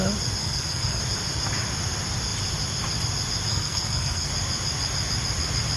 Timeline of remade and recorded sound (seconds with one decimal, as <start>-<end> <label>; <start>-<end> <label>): 0.0-0.4 recorded; 0.4-1.0 remade; 1.0-3.5 recorded; 3.5-4.3 remade; 4.3-5.8 recorded